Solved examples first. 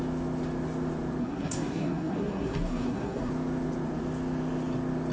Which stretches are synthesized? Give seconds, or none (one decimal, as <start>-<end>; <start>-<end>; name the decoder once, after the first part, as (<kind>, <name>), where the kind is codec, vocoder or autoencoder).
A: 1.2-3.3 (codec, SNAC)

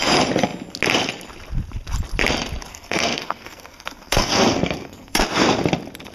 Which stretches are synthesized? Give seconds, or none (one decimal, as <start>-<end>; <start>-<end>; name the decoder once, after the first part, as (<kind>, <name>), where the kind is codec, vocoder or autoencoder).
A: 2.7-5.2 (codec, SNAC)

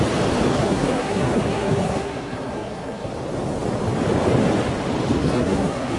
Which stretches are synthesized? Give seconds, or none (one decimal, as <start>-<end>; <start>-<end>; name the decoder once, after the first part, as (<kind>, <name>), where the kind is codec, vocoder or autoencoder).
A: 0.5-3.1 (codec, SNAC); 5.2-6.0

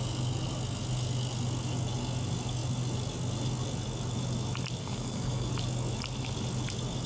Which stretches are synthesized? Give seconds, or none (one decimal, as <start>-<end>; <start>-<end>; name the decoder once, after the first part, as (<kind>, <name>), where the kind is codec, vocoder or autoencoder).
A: 4.8-5.5 (codec, SNAC)